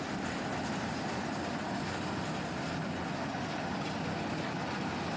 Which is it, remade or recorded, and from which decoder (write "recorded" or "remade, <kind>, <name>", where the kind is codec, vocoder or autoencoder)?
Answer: recorded